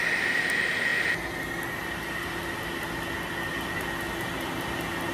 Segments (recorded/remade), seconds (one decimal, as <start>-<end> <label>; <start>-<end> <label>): 0.0-5.1 recorded